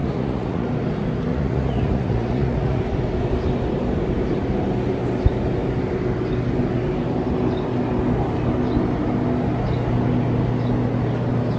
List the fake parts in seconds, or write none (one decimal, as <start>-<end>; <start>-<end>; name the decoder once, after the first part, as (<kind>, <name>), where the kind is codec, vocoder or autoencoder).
0.0-0.7 (vocoder, Vocos); 1.3-2.8